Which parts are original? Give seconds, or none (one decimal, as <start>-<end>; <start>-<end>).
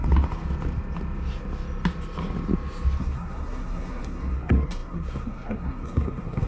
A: 0.0-3.0